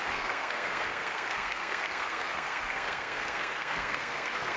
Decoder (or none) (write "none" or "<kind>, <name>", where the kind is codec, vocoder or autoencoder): codec, SNAC